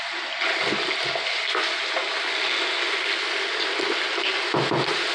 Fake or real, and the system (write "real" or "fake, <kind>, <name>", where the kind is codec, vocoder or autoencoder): real